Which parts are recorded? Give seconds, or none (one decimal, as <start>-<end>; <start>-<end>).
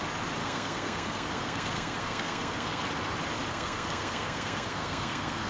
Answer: 0.0-0.4; 2.8-3.5